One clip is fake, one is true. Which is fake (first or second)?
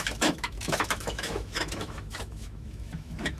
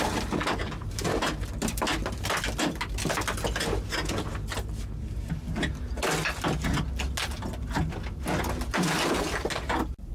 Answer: first